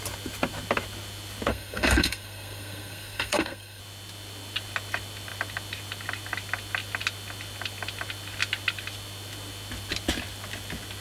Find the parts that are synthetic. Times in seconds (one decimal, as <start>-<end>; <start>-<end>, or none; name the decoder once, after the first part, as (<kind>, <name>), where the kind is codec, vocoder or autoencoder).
1.5-3.8 (codec, SNAC)